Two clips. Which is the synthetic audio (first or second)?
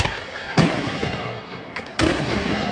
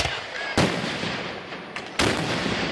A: first